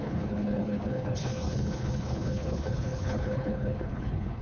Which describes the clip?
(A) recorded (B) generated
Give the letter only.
B